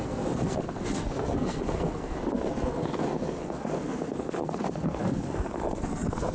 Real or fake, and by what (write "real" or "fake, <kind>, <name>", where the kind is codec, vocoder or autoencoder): fake, codec, SNAC